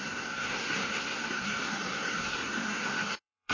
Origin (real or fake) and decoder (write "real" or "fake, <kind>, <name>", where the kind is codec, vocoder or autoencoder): fake, codec, SNAC